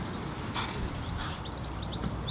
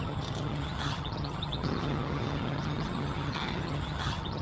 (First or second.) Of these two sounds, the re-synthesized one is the second